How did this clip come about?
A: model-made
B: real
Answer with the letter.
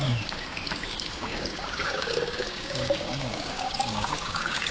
A